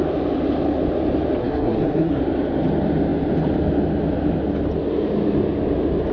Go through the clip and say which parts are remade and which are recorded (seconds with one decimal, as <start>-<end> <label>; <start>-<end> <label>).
0.0-1.4 recorded; 1.4-2.2 remade; 2.2-6.1 recorded